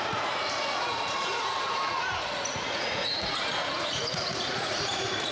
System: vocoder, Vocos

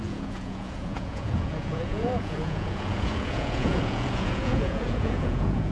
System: vocoder, Vocos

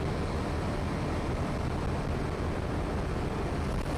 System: none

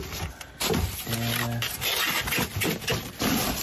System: none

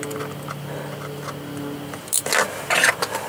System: none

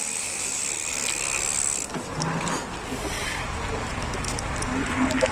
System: none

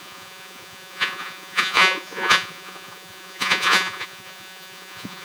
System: vocoder, Vocos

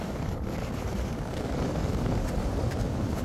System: codec, DAC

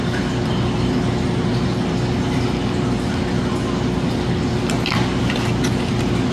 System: none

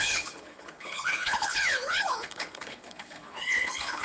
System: codec, HILCodec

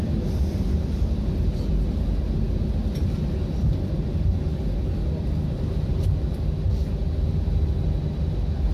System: none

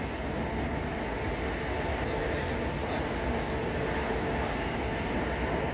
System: none